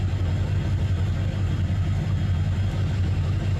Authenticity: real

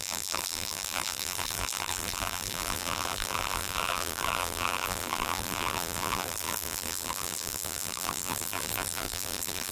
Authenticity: fake